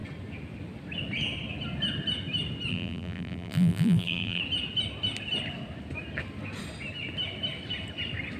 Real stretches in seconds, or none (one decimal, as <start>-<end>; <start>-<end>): 0.0-2.7; 4.4-8.4